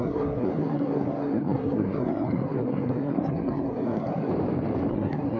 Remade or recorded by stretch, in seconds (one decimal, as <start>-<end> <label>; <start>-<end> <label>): 0.0-4.3 remade; 4.3-4.9 recorded; 4.9-5.4 remade